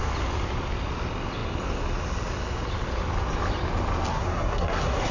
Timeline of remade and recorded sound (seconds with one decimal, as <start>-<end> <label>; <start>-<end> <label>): 0.0-4.1 recorded; 4.1-5.1 remade